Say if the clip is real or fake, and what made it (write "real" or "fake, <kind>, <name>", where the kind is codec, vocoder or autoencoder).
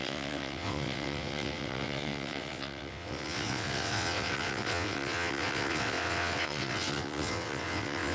fake, vocoder, WaveNeXt